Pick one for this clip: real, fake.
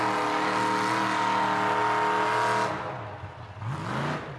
real